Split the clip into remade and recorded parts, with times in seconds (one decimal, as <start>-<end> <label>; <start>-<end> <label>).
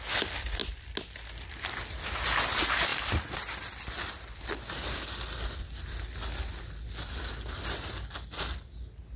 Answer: 0.0-9.2 recorded